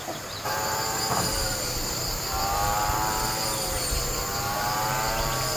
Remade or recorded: remade